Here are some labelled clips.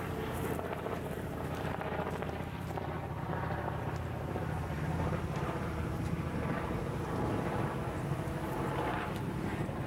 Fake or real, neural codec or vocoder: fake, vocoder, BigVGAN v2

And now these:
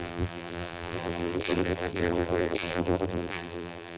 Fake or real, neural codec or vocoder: fake, vocoder, BigVGAN v2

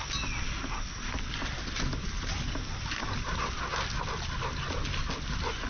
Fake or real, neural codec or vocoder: real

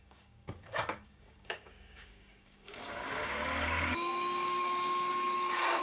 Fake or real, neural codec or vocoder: fake, codec, DAC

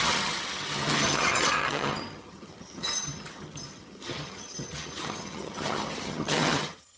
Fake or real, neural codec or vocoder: fake, vocoder, HiFi-GAN